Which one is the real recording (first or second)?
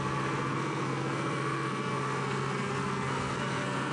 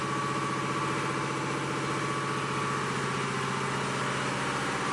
second